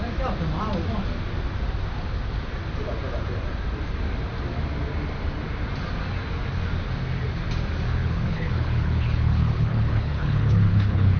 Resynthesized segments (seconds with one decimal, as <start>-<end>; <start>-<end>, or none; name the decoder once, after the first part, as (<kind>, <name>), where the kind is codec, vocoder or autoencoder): 8.0-11.2 (codec, HILCodec)